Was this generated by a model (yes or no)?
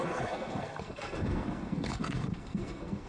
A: yes